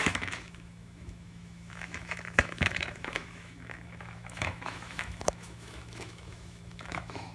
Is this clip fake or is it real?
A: fake